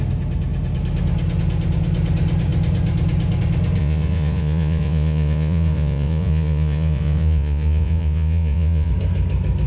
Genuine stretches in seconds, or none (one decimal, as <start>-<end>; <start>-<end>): 0.0-3.8; 8.9-9.7